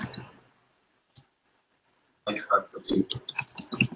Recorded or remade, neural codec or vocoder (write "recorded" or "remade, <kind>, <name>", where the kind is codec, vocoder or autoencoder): recorded